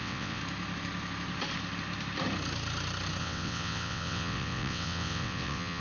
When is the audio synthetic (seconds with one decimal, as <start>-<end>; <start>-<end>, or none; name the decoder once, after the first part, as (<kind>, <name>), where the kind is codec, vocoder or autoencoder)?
0.0-0.4 (vocoder, WaveNeXt); 3.2-5.8